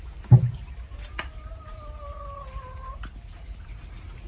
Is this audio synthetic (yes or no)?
no